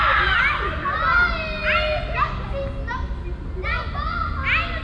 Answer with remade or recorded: recorded